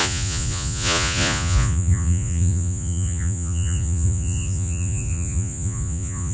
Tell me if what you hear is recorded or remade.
remade